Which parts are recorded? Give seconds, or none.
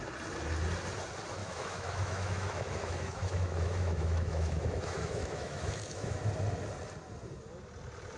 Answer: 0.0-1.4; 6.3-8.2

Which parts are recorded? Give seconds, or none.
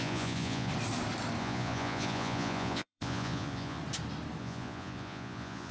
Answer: 0.7-1.4; 3.8-4.4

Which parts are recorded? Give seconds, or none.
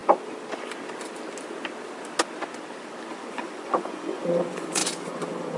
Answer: 0.0-3.1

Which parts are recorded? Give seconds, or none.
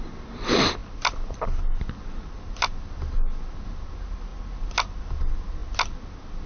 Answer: 0.0-6.5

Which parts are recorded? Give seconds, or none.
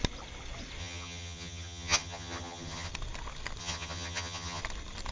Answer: 0.0-0.8; 2.9-3.6; 4.6-5.1